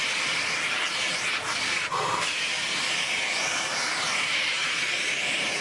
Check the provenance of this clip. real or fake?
fake